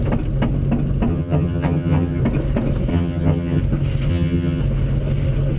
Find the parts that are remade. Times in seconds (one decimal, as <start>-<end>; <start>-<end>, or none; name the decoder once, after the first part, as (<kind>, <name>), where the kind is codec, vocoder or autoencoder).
1.1-2.2 (vocoder, HiFi-GAN); 2.9-3.6; 4.1-4.6